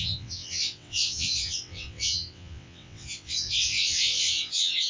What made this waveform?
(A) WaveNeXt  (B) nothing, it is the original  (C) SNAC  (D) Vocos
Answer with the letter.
A